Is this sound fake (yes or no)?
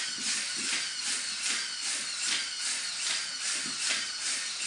no